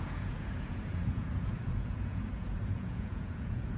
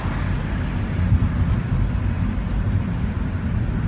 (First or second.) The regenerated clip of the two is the first